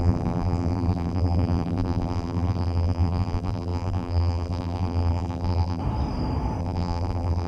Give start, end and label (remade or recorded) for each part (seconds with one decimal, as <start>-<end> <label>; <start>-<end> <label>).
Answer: 0.0-5.8 remade; 5.8-6.6 recorded; 6.6-7.5 remade